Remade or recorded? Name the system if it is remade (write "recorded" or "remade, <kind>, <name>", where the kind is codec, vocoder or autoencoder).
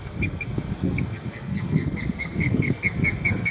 remade, codec, SNAC